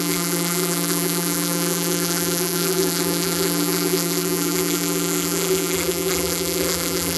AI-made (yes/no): yes